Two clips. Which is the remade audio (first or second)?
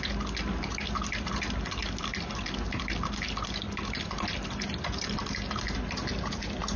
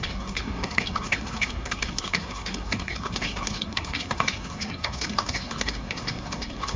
second